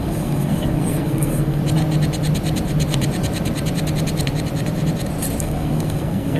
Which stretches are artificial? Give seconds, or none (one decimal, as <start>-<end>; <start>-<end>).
0.0-1.6; 5.4-6.4